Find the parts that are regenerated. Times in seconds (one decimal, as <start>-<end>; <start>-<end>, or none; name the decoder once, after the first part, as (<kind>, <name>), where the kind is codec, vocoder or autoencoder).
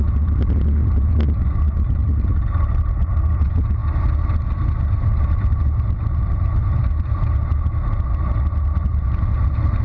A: none